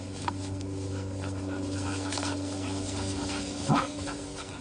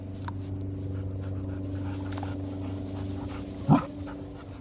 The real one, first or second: second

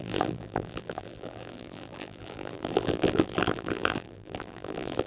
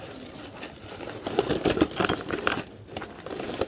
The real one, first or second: second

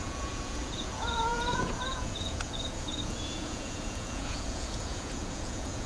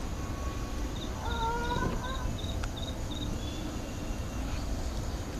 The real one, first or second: second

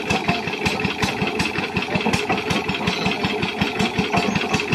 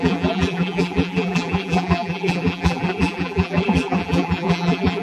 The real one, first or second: first